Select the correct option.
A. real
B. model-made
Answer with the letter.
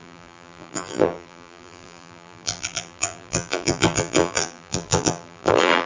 B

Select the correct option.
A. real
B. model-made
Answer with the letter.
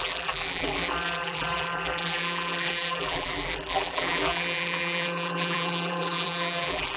B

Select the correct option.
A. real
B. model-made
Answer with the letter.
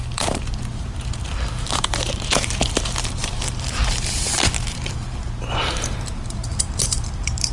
B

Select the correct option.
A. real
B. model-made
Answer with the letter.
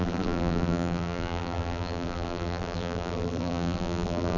B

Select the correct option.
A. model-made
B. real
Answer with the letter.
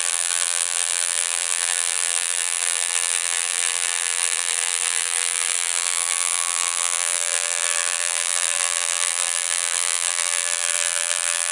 A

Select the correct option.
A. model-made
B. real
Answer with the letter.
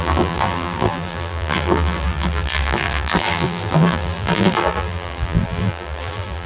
A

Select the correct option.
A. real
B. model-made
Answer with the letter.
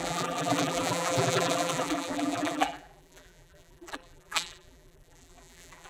B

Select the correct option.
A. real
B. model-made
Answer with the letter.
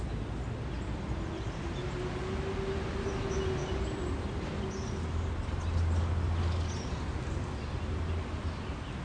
A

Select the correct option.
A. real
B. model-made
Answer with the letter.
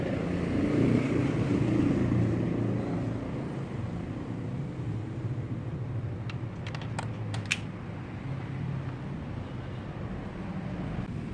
A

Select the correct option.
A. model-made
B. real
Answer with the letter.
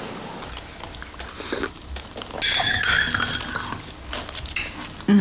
B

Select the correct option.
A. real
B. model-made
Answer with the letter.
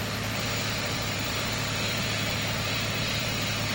B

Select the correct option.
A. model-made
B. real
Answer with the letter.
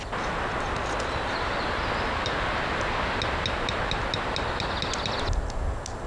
B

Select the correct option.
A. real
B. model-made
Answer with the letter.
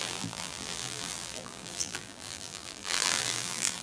B